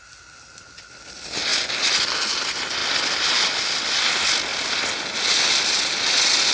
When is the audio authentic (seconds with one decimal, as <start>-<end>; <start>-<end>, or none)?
0.0-6.5